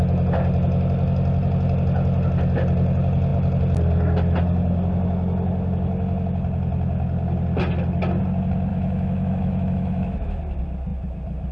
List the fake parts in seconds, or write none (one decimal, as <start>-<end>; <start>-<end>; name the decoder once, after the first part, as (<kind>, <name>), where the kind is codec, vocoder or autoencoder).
8.7-10.4 (autoencoder, DAC-VAE)